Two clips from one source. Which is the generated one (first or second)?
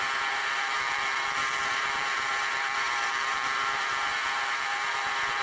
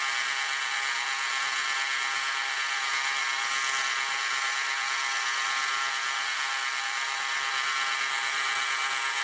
first